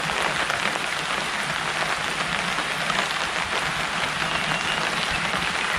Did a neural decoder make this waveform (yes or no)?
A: no